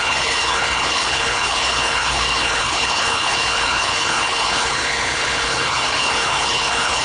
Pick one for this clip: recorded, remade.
remade